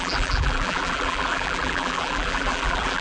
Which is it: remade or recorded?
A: remade